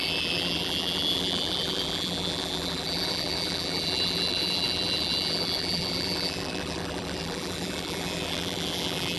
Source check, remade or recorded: remade